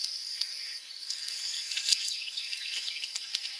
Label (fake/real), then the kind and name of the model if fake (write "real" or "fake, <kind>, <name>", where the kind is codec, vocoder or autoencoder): fake, codec, SNAC